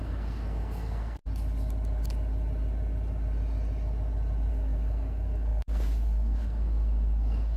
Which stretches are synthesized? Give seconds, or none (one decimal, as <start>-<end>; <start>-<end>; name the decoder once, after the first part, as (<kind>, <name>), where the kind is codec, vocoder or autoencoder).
0.0-1.2 (codec, SNAC); 4.5-7.6